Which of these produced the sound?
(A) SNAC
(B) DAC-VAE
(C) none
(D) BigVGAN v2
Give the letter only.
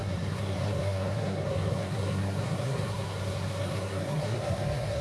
A